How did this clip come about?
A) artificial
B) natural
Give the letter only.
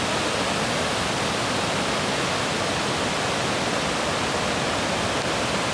B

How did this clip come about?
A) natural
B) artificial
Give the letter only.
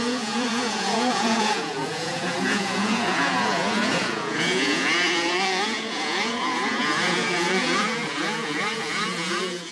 B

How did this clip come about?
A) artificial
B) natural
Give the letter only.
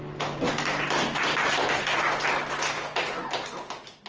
B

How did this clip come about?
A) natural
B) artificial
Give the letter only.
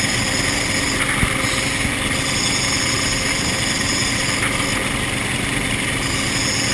A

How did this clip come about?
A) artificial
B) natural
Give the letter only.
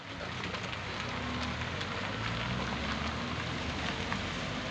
B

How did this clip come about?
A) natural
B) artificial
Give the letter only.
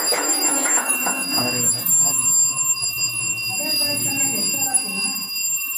B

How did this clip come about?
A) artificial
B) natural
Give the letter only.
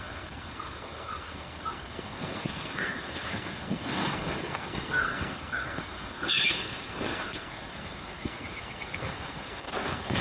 A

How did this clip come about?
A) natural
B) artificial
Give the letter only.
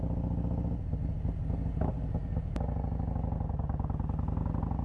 A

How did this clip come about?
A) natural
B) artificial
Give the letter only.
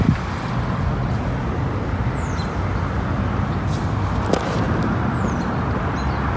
A